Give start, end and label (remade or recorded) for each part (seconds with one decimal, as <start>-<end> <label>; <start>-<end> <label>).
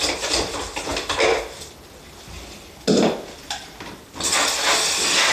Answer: 0.0-5.3 recorded